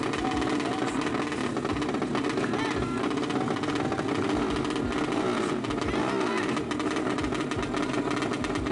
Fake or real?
real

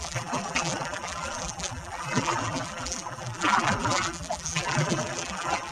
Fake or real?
fake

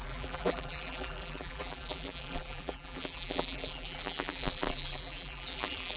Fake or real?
fake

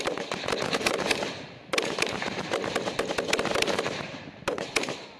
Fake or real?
real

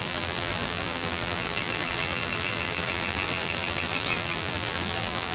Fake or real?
fake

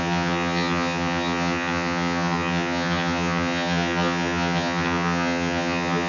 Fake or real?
fake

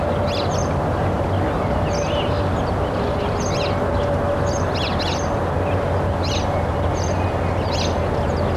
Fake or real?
real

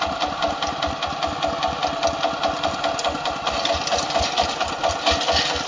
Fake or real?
real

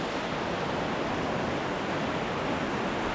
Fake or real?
real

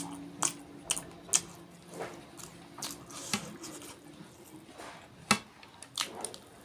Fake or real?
real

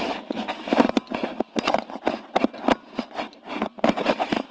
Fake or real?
fake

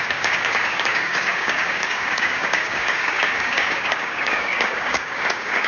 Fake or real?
fake